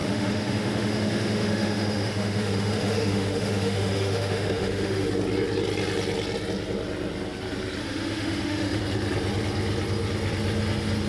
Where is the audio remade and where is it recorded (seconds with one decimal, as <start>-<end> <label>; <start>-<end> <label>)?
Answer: 0.0-5.1 remade; 5.1-7.8 recorded; 7.8-8.8 remade; 8.8-11.1 recorded